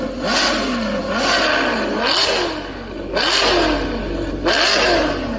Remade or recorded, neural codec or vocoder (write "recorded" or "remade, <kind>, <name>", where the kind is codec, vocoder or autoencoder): recorded